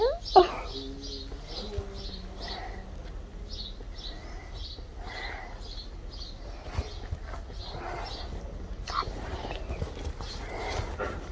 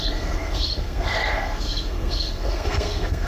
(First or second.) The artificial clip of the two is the second